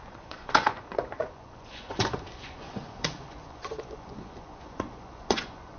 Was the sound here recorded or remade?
remade